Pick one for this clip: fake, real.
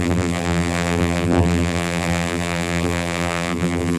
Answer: fake